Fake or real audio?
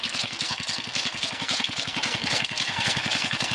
fake